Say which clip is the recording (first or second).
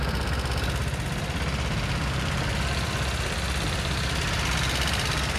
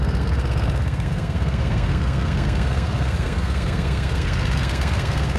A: first